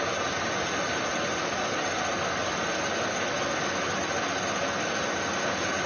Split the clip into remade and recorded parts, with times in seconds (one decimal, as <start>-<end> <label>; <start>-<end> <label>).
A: 0.0-5.9 recorded